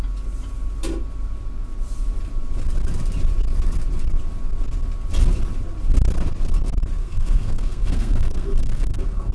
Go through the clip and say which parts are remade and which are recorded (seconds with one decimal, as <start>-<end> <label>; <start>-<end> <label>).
0.0-7.0 recorded; 7.0-9.3 remade